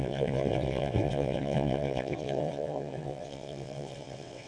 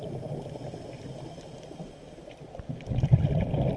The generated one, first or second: first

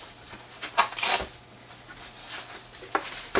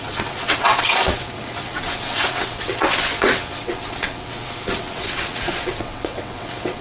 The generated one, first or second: second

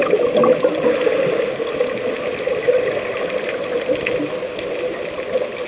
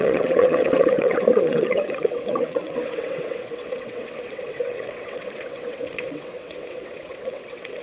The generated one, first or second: second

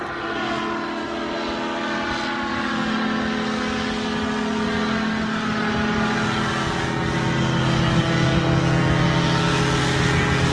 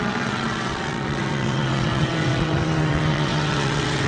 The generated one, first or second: second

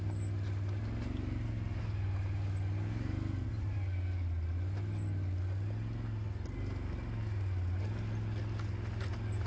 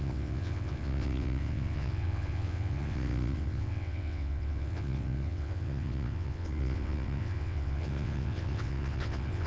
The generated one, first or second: second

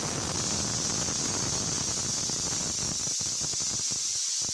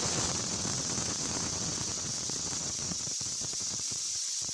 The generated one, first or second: second